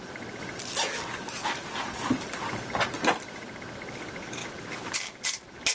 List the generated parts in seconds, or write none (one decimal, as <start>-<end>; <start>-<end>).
4.4-4.9